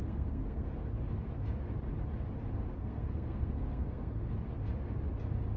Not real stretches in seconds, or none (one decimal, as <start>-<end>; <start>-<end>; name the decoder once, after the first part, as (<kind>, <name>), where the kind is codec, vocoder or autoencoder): 0.0-0.7 (codec, SNAC); 2.8-4.3